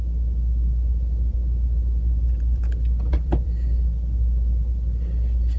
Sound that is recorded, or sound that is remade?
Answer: recorded